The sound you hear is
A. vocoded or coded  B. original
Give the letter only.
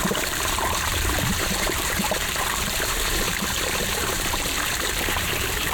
A